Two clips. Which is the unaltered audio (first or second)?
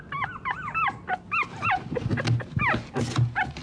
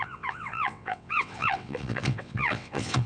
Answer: first